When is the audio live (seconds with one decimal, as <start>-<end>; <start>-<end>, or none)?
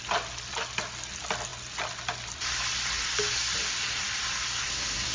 0.0-5.1